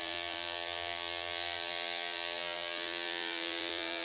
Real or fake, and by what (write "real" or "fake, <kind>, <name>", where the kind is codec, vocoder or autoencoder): fake, vocoder, BigVGAN v2